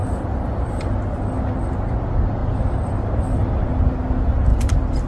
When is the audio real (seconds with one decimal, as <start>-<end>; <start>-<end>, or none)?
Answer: 0.8-4.5